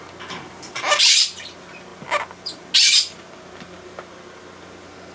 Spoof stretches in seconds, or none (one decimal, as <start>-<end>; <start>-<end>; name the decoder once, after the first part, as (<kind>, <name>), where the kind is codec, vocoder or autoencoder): none